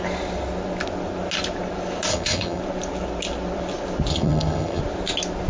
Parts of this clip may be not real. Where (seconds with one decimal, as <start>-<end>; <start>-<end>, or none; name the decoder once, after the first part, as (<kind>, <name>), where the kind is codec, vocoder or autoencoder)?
2.1-2.6 (vocoder, HiFi-GAN); 4.1-4.8